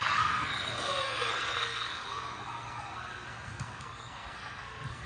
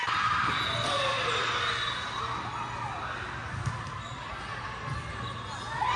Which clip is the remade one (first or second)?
first